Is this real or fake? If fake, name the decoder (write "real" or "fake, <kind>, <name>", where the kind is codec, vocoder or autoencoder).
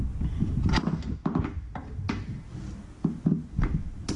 real